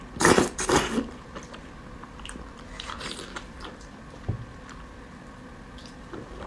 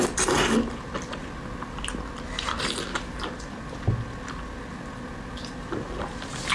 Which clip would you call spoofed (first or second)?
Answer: first